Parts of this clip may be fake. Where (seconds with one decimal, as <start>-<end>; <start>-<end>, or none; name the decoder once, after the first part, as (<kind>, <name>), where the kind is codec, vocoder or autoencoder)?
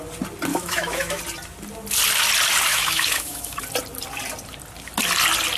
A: 0.5-1.2 (autoencoder, DAC-VAE); 2.7-3.6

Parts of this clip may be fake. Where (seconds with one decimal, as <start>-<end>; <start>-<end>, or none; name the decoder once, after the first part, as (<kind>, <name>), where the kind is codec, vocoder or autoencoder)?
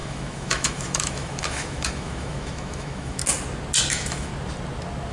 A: 0.0-3.2 (autoencoder, DAC-VAE); 3.9-4.3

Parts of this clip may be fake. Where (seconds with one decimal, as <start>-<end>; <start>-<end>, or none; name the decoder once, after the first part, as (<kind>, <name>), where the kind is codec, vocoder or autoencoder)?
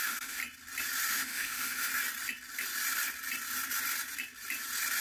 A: 0.0-0.4 (autoencoder, DAC-VAE); 1.1-1.9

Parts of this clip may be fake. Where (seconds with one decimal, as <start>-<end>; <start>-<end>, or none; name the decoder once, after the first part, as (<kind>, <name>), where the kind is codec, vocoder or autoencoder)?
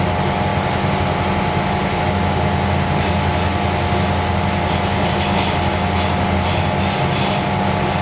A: none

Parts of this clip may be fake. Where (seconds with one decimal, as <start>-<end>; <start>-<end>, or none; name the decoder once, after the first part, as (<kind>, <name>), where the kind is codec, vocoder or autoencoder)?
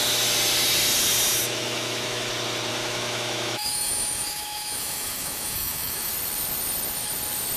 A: 1.4-2.3 (autoencoder, DAC-VAE); 2.7-6.1